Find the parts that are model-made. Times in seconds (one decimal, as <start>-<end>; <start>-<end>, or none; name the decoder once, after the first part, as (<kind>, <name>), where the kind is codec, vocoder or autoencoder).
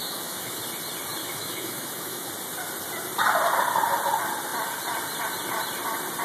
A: 0.0-0.6 (autoencoder, DAC-VAE); 1.2-2.3